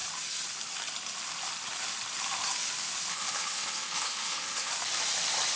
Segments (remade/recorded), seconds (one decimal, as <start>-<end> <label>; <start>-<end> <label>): 0.0-3.1 recorded; 3.1-4.7 remade; 4.7-5.6 recorded